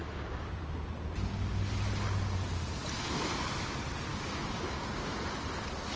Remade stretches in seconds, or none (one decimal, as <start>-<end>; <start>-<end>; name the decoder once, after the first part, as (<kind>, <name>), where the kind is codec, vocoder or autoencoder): 0.0-0.6 (codec, DAC); 4.1-5.1